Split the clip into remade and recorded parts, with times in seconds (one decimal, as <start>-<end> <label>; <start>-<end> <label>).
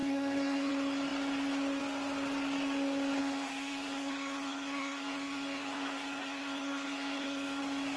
0.0-0.7 remade; 0.7-3.2 recorded; 3.2-7.6 remade; 7.6-8.0 recorded